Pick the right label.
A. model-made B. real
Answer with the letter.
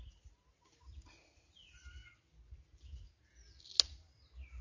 B